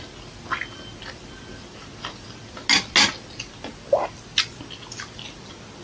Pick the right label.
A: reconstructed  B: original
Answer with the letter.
B